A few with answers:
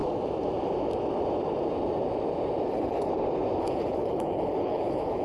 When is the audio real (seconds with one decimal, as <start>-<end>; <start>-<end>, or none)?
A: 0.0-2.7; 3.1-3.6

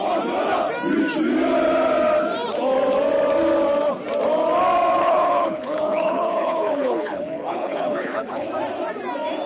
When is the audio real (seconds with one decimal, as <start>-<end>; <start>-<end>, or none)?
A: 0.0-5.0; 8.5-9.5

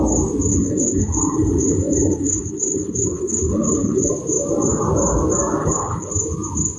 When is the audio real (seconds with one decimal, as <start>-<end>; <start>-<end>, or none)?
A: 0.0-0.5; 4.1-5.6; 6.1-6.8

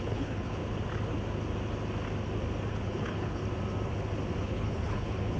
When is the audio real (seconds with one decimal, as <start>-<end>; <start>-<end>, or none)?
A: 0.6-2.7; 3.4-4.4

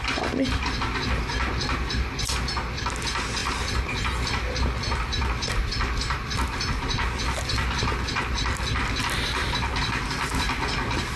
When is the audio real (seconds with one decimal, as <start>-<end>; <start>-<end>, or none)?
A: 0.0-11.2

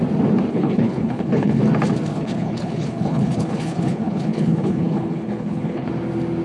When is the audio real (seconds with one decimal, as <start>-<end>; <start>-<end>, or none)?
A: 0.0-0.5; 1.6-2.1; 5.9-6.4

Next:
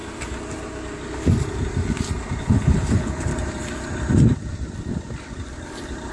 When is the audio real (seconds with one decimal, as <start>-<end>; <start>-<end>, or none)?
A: 0.0-2.4; 3.3-6.1